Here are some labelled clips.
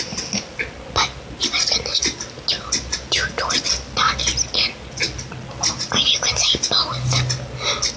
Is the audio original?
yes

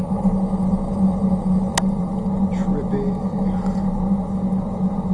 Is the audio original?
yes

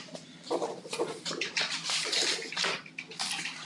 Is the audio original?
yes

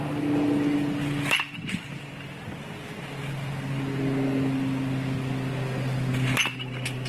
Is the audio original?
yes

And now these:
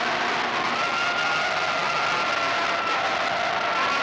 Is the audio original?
yes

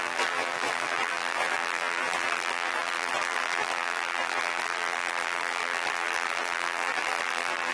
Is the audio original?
no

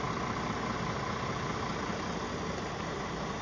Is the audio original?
yes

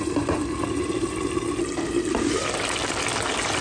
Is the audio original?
yes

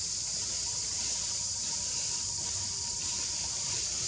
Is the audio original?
no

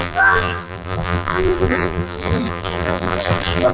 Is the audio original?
no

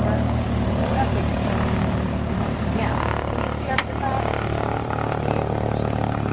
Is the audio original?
no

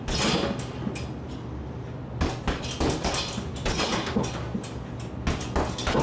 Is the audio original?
yes